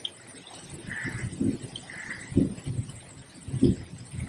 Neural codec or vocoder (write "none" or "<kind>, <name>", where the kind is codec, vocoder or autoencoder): none